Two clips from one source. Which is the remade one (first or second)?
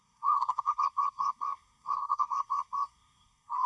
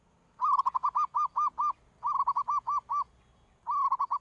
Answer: first